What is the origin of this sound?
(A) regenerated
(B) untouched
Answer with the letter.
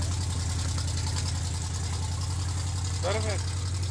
B